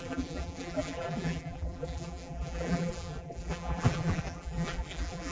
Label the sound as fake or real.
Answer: fake